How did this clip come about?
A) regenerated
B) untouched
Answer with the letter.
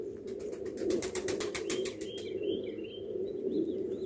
A